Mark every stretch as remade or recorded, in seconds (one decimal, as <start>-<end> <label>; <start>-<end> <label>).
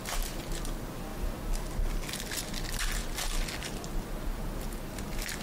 0.0-5.4 recorded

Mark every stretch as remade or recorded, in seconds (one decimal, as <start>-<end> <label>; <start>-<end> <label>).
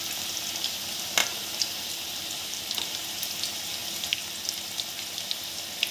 0.0-1.2 recorded; 1.2-3.2 remade; 3.2-5.9 recorded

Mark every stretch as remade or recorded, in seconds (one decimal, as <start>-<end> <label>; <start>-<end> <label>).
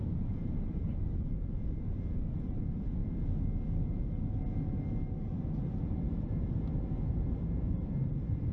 0.0-3.0 remade; 3.0-4.2 recorded; 4.2-8.5 remade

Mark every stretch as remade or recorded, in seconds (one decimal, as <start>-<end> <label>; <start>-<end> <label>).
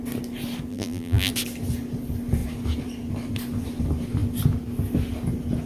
0.0-0.7 recorded; 0.7-1.3 remade; 1.3-5.7 recorded